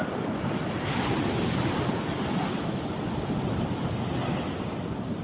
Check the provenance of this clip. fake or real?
real